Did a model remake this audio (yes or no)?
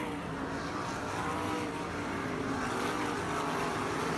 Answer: no